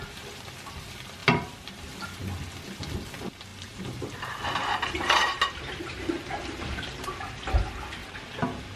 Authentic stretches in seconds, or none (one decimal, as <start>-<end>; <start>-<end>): 0.0-1.2; 2.0-3.5; 7.5-8.0